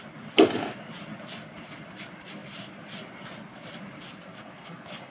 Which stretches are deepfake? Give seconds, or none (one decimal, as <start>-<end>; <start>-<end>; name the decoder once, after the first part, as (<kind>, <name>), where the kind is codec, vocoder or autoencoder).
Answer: 4.3-5.1 (codec, DAC)